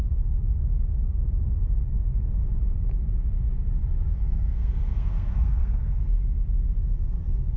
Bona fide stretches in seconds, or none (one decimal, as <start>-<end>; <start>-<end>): 0.0-4.1; 6.0-7.6